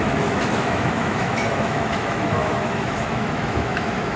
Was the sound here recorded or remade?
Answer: remade